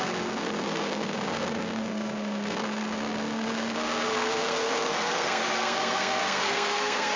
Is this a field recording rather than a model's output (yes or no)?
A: no